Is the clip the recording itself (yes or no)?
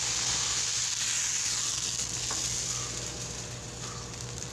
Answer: yes